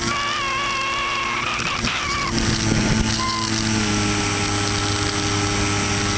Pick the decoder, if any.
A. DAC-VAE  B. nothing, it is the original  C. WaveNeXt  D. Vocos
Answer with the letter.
B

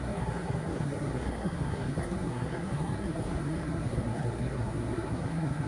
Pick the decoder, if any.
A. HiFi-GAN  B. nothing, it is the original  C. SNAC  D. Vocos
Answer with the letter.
C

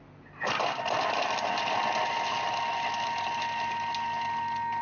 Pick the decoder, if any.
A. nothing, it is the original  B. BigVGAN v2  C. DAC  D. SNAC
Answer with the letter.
A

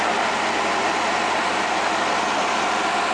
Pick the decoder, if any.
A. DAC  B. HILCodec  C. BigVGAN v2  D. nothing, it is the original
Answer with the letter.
D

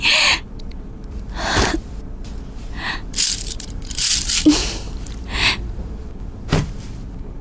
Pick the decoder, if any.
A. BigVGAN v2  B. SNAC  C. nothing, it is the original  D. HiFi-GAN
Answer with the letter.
A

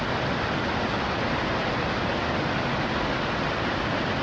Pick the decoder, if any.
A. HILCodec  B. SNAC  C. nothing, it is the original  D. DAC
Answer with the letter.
C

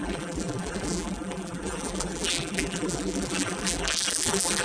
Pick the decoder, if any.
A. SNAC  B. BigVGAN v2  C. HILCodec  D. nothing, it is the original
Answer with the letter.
B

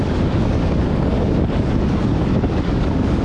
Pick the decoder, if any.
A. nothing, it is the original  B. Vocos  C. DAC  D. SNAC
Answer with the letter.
C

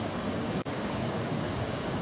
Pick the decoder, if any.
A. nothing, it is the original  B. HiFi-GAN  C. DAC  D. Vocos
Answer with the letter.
C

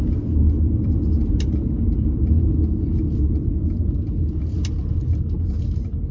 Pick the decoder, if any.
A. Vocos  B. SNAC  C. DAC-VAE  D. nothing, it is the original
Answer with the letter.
D